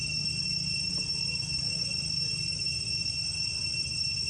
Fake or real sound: real